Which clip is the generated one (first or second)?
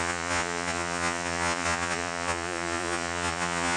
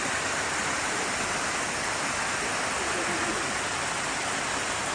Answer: first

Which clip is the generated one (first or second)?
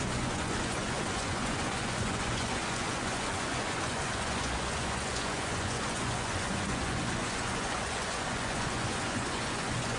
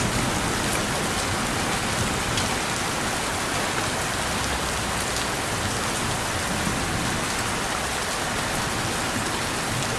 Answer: first